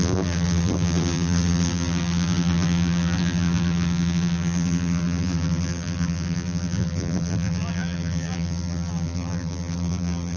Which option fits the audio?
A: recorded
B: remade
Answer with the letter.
B